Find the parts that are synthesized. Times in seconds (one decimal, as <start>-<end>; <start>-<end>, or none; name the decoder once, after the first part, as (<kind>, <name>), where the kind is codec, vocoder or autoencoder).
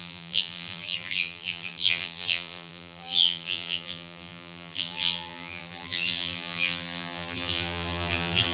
0.0-8.5 (vocoder, BigVGAN v2)